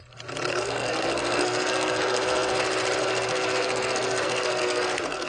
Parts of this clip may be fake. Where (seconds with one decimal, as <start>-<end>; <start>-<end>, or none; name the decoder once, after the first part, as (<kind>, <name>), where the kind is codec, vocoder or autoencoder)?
0.5-2.6 (codec, SNAC); 3.0-5.3